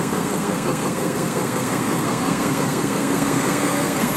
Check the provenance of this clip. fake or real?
fake